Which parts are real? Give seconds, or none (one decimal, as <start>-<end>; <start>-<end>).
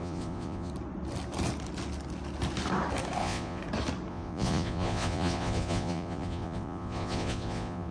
0.7-3.2; 3.6-4.1